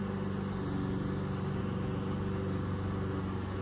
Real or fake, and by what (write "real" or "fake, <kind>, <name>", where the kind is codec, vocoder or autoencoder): real